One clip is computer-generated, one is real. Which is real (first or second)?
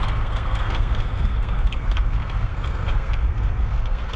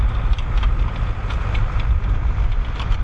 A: second